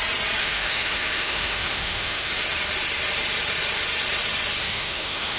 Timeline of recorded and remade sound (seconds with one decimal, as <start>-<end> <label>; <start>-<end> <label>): 0.0-0.4 recorded; 0.4-2.3 remade; 2.3-4.6 recorded; 4.6-5.4 remade